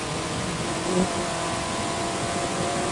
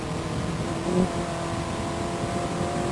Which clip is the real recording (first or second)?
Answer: second